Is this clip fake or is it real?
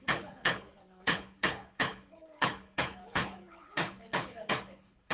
fake